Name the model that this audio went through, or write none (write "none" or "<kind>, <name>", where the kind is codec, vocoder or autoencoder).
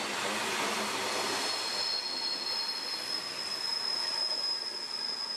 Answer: none